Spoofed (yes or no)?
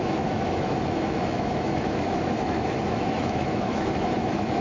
yes